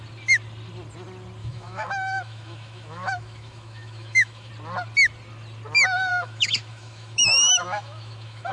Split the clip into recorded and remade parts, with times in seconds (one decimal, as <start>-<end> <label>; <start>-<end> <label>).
0.0-1.4 recorded; 1.4-4.5 remade; 4.5-6.1 recorded; 6.1-8.5 remade